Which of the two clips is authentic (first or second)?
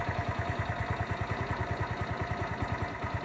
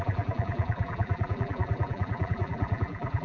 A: first